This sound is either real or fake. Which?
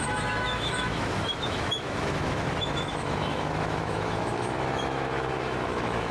fake